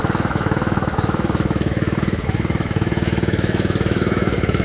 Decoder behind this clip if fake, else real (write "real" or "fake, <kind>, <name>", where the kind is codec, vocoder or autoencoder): fake, autoencoder, DAC-VAE